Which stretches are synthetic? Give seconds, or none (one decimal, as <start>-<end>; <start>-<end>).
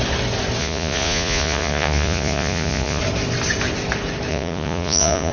0.6-3.0; 4.3-5.3